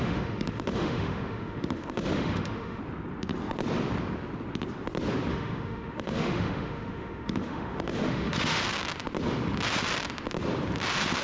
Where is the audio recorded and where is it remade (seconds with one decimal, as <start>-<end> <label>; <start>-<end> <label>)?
0.0-2.8 remade; 2.8-5.3 recorded; 5.3-8.6 remade; 8.6-11.2 recorded